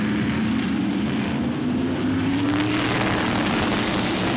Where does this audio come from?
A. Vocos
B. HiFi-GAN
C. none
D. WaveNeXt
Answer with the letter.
C